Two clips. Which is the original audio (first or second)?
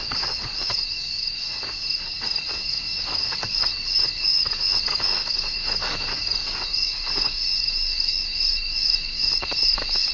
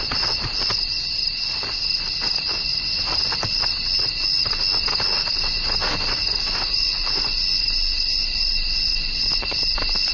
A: second